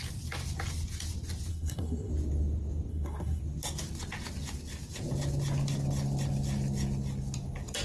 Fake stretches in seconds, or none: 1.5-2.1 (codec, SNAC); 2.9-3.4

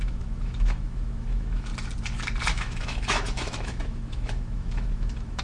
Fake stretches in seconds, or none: 0.0-1.7 (autoencoder, DAC-VAE); 2.5-5.4

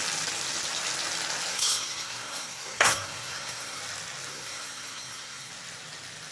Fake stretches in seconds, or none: 1.5-3.8 (codec, SNAC); 4.3-5.5

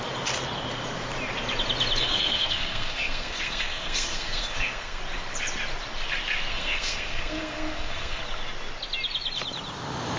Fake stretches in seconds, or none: 2.0-5.0 (codec, SNAC); 6.5-8.2

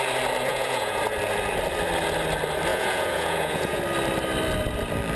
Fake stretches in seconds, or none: 0.5-1.0 (vocoder, Vocos); 2.7-3.8

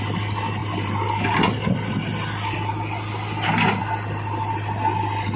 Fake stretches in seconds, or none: none